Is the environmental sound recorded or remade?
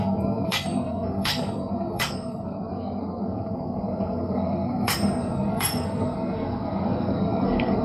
remade